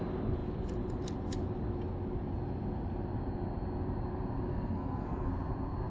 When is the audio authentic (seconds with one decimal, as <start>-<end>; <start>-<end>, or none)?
0.0-4.5; 5.3-5.9